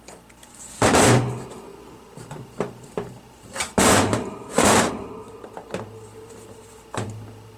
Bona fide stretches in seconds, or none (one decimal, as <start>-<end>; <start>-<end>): 0.0-1.7; 4.9-7.6